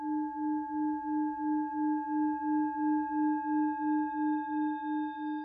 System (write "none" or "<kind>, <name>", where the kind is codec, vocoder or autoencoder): autoencoder, DAC-VAE